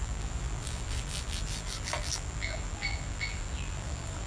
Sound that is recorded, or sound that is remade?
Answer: remade